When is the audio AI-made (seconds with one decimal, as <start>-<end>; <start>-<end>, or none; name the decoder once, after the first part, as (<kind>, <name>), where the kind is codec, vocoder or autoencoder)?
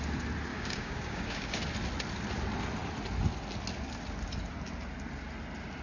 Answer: 0.5-1.6 (codec, DAC)